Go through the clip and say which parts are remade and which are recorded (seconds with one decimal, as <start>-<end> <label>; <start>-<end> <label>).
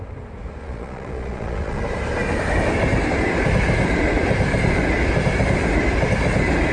0.0-0.6 recorded; 0.6-1.8 remade; 1.8-6.7 recorded